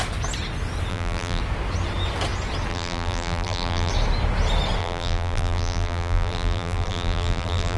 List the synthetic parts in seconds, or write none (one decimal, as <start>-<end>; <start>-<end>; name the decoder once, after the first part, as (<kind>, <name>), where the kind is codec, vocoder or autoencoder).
0.9-1.4 (vocoder, BigVGAN v2); 2.7-3.9; 4.8-7.8